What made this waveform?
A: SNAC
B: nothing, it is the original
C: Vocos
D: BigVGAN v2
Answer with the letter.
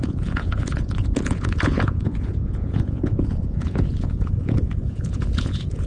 C